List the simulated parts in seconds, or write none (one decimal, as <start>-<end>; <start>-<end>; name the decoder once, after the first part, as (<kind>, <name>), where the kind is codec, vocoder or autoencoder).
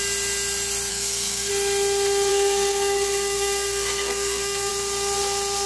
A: 0.9-1.5 (codec, SNAC); 2.3-4.7